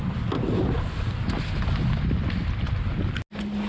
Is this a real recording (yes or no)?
yes